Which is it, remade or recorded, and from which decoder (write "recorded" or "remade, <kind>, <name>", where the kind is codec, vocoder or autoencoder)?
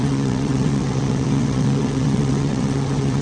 remade, vocoder, WaveNeXt